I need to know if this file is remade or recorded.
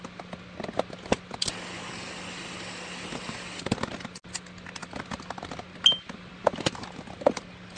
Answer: recorded